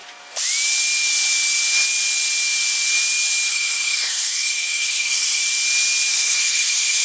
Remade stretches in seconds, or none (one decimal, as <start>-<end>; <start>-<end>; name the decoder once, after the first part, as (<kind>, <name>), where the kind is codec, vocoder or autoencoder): 3.5-5.4 (codec, SNAC); 6.1-7.0